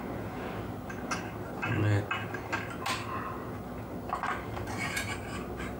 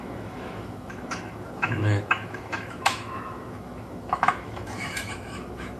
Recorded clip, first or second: first